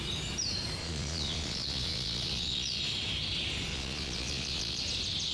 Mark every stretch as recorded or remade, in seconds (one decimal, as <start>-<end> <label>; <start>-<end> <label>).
0.0-0.8 recorded; 0.8-2.8 remade; 2.8-3.7 recorded; 3.7-4.8 remade; 4.8-5.3 recorded